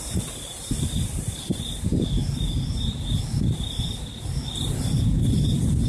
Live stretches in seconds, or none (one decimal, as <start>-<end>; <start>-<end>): none